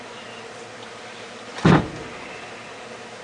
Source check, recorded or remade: recorded